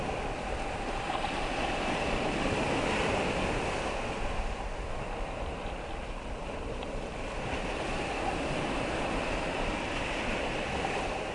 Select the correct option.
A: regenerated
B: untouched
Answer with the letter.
B